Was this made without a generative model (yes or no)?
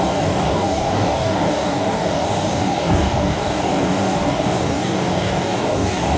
no